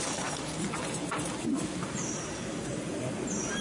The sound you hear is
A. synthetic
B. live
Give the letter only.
B